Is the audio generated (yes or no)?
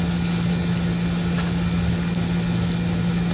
no